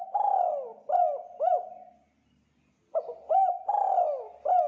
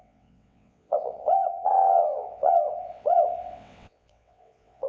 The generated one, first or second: second